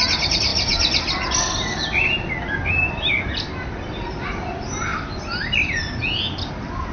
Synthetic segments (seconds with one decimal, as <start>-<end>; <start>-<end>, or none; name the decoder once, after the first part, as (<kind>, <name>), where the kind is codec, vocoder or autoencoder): none